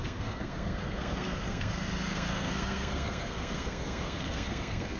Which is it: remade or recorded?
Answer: remade